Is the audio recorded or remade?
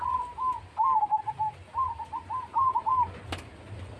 recorded